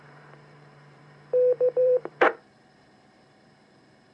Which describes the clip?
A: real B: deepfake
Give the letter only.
B